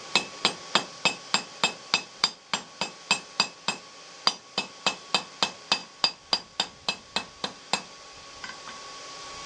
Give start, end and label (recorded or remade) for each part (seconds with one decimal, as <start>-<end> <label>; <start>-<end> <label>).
0.0-9.5 recorded